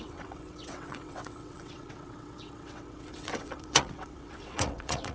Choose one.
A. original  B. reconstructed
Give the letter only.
B